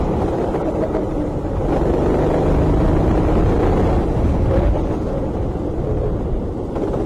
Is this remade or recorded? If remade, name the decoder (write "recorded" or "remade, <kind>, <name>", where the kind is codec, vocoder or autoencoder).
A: recorded